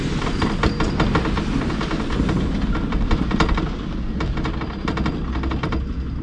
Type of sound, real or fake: real